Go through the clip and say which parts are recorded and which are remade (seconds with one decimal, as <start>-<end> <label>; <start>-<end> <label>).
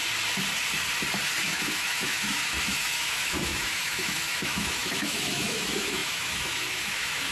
0.0-1.4 recorded; 1.4-7.3 remade